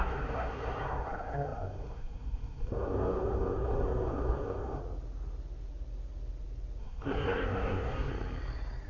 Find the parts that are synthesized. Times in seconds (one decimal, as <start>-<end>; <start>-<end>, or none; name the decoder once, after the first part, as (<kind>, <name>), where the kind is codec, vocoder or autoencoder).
0.0-4.8 (codec, SNAC); 6.8-8.1